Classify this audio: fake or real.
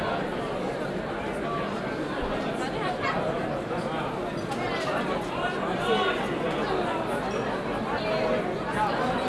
real